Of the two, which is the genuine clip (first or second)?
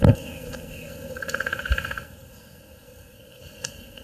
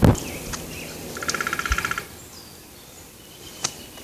second